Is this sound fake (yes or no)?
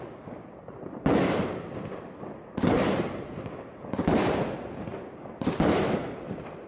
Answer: no